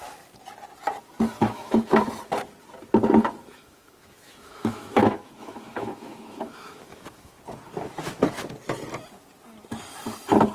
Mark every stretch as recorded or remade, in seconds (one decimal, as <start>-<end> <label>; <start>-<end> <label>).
0.0-1.4 recorded; 1.4-2.1 remade; 2.1-3.5 recorded; 3.5-7.4 remade; 7.4-10.5 recorded